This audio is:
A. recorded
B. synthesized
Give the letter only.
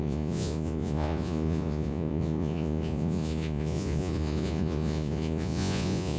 B